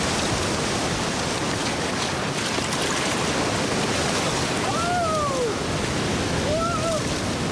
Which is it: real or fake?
real